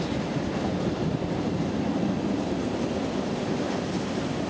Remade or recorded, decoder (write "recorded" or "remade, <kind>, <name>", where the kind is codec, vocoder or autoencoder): recorded